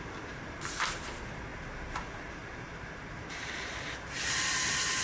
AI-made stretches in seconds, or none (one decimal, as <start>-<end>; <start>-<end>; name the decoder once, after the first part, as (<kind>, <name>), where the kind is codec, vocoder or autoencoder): 0.0-5.0 (vocoder, BigVGAN v2)